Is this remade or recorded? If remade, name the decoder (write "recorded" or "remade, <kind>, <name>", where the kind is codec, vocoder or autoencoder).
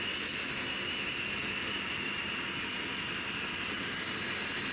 recorded